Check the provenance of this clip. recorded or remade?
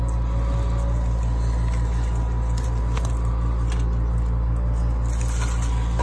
recorded